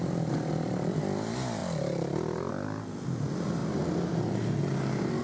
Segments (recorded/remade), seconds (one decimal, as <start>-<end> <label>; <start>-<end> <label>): 0.0-5.2 recorded